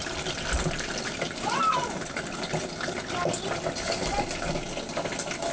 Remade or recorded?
recorded